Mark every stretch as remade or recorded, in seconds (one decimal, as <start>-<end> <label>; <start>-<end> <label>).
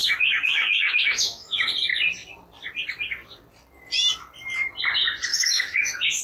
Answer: 0.0-1.7 remade; 1.7-5.3 recorded; 5.3-6.2 remade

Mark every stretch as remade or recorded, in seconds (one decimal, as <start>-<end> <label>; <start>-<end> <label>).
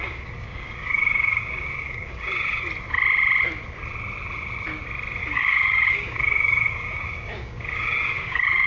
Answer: 0.0-2.7 remade; 2.7-5.2 recorded; 5.2-8.7 remade